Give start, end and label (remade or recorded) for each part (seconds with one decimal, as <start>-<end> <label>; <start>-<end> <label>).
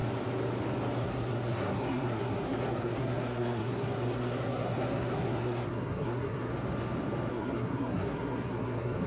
0.0-1.0 recorded; 1.0-6.5 remade; 6.5-7.3 recorded; 7.3-9.1 remade